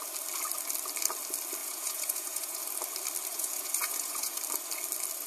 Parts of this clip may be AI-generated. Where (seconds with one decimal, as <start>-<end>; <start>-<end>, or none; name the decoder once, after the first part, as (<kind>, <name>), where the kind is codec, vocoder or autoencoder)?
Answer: 1.6-2.6 (vocoder, Vocos); 3.3-4.4